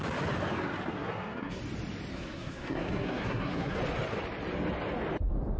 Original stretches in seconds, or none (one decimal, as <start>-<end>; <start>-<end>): 0.0-0.9; 1.6-2.1; 3.8-5.6